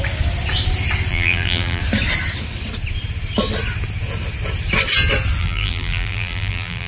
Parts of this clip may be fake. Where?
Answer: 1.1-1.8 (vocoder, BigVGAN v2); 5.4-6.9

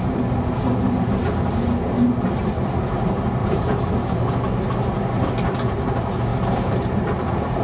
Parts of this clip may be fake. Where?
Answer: 3.4-3.9 (vocoder, BigVGAN v2); 6.3-7.6